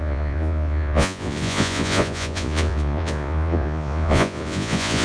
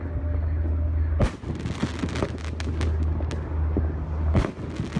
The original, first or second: second